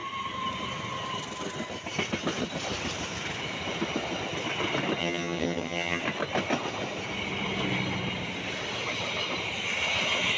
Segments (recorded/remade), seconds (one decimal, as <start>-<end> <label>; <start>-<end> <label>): 0.0-5.0 recorded; 5.0-6.0 remade; 6.0-10.4 recorded

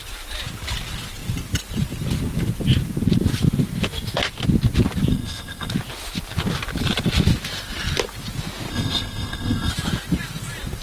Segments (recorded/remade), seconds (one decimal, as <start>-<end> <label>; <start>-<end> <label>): 0.0-5.1 recorded; 5.1-5.7 remade; 5.7-8.7 recorded; 8.7-9.7 remade; 9.7-10.8 recorded

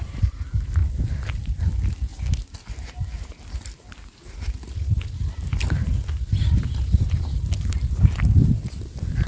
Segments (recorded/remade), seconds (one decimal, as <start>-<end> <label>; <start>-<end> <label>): 0.0-2.1 remade; 2.1-7.1 recorded; 7.1-9.3 remade

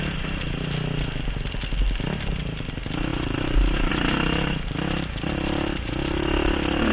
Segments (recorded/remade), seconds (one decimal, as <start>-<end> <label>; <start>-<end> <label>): 0.0-6.9 recorded

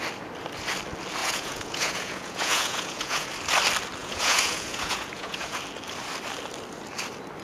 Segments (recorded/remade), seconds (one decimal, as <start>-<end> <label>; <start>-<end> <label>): 0.0-1.2 recorded; 1.2-3.3 remade; 3.3-4.0 recorded; 4.0-5.6 remade; 5.6-7.4 recorded

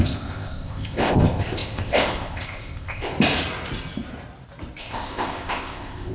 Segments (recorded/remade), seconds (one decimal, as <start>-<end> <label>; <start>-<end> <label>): 0.0-3.1 remade; 3.1-4.8 recorded; 4.8-6.1 remade

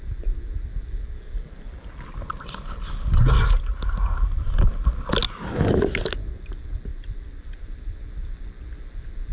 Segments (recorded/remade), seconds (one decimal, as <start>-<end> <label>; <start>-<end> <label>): 0.0-2.3 recorded; 2.3-3.1 remade; 3.1-6.9 recorded; 6.9-8.0 remade; 8.0-9.3 recorded

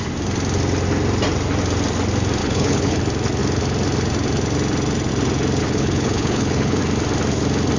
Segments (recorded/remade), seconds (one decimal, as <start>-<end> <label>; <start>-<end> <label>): 0.0-2.4 recorded; 2.4-3.0 remade; 3.0-5.6 recorded; 5.6-6.8 remade; 6.8-7.8 recorded